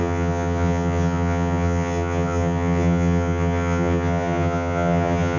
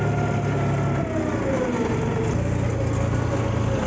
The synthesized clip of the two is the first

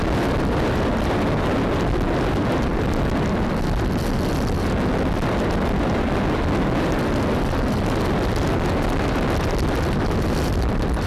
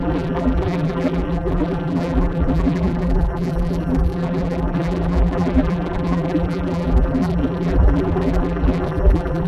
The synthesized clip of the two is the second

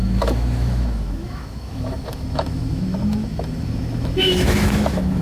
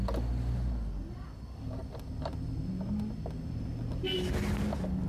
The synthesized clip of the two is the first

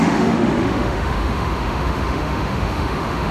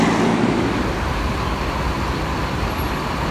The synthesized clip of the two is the first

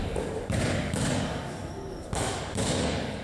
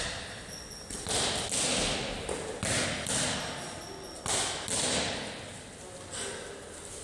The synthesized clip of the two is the first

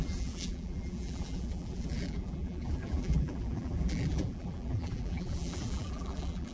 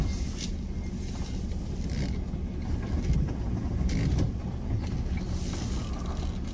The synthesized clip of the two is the first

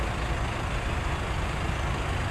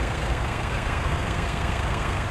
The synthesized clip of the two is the second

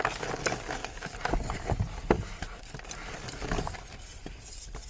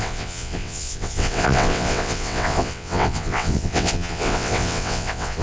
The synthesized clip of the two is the second